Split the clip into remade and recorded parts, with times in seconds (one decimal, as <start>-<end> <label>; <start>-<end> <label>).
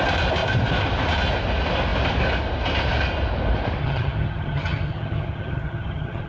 0.0-3.8 recorded; 3.8-6.3 remade